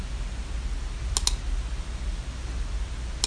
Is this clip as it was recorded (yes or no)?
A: yes